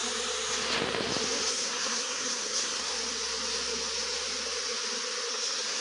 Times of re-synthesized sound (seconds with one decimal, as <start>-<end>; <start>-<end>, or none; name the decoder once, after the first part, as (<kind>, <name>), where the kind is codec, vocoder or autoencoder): 1.5-2.9 (codec, SNAC); 5.3-5.8